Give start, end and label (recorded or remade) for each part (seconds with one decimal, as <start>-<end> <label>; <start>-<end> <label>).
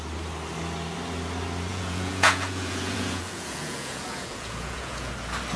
0.0-1.7 recorded; 1.7-5.1 remade; 5.1-5.6 recorded